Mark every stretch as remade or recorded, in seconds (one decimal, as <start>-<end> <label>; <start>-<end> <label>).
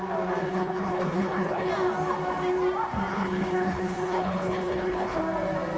0.0-0.4 recorded; 0.4-1.7 remade; 1.7-3.1 recorded; 3.1-5.2 remade; 5.2-5.8 recorded